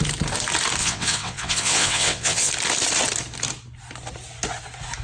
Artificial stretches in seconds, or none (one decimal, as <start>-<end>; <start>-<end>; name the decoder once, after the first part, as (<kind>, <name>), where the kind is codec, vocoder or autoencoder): 0.8-2.5 (vocoder, WaveNeXt)